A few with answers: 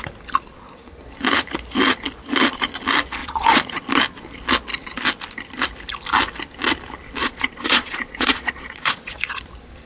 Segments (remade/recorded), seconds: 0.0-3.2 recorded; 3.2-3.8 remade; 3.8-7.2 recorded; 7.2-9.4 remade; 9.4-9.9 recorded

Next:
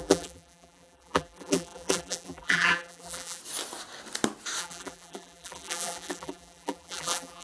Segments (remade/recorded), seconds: 0.0-3.4 remade; 3.4-4.6 recorded; 4.6-7.4 remade

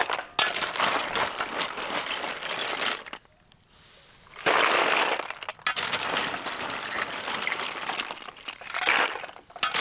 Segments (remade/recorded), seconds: 0.0-9.8 recorded

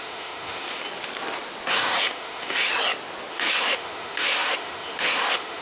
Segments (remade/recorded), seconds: 0.0-0.8 remade; 0.8-1.7 recorded; 1.7-2.7 remade; 2.7-3.3 recorded; 3.3-5.6 remade